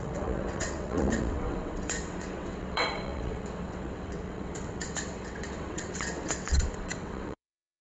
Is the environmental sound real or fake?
fake